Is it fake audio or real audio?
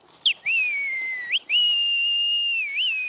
real